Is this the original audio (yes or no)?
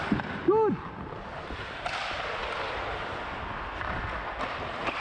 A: yes